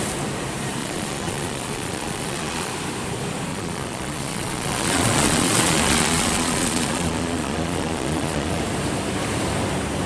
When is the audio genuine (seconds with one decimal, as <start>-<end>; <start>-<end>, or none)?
0.0-0.8; 2.7-3.5; 8.6-10.1